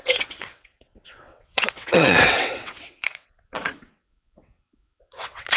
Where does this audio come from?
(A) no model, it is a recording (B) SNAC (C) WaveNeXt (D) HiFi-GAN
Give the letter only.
C